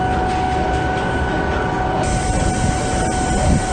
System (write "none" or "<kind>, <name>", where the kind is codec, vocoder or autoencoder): none